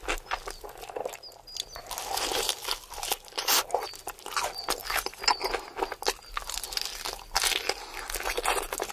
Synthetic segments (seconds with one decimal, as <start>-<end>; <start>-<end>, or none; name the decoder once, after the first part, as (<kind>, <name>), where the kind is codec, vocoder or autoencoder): none